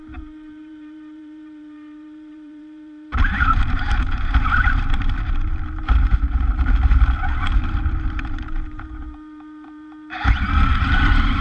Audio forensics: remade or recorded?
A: remade